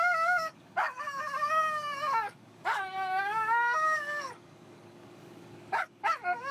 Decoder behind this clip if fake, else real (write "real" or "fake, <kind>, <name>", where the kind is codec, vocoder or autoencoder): fake, codec, DAC